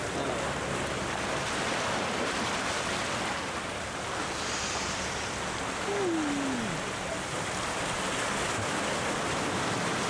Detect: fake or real real